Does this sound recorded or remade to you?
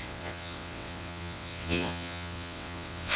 remade